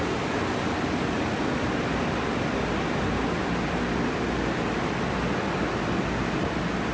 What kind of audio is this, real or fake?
real